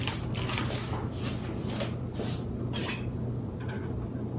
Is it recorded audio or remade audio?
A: recorded